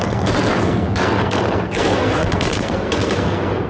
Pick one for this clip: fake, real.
fake